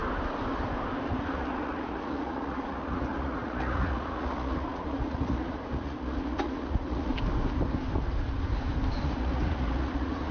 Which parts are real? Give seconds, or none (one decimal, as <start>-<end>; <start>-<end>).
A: 0.0-1.1; 7.1-9.0